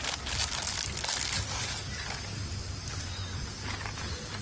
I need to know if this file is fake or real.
real